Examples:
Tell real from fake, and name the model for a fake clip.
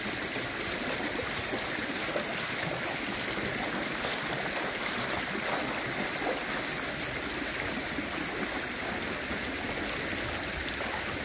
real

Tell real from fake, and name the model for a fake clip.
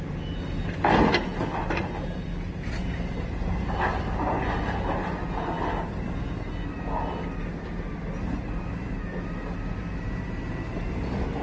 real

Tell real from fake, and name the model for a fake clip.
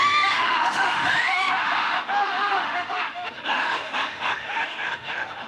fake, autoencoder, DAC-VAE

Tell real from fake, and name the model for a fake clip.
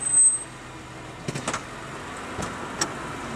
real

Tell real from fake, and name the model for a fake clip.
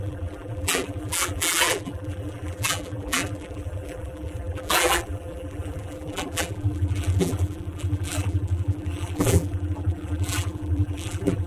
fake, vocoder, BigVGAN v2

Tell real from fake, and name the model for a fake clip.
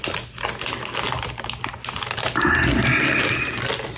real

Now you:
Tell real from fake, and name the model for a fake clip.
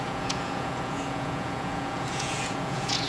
fake, vocoder, Vocos